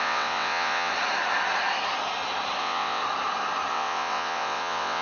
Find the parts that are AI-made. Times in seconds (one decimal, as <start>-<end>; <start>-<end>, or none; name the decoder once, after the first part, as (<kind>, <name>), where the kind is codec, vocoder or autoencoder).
0.0-0.9 (vocoder, WaveNeXt); 2.6-3.0; 3.7-5.0